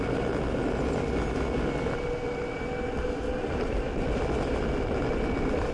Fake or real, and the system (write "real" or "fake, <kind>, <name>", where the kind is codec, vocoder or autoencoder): real